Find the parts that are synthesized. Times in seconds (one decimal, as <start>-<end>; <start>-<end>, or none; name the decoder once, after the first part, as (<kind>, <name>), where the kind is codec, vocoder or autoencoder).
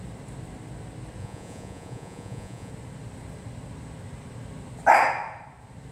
1.2-2.7 (vocoder, Vocos)